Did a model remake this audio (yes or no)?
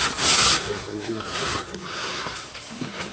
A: yes